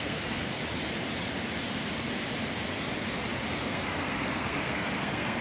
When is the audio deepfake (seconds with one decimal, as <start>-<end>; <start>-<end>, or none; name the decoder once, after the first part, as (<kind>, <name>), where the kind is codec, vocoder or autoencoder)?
0.0-0.5 (codec, SNAC); 3.7-5.4